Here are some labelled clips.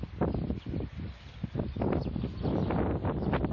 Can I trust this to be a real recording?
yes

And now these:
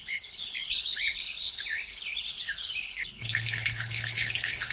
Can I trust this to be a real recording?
no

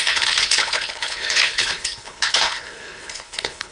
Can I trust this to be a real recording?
no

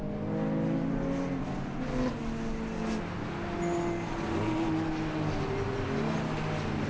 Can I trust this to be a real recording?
yes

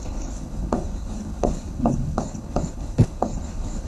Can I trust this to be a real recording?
no